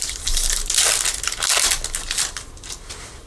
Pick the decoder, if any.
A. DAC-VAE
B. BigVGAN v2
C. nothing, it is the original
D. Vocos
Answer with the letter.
C